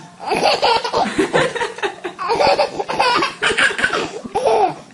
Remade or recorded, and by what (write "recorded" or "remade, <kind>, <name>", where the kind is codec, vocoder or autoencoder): recorded